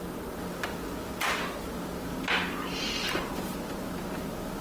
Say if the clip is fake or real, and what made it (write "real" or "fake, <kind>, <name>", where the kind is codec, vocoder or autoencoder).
real